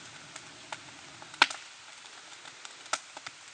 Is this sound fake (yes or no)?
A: no